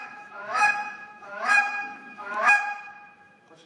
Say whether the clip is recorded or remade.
remade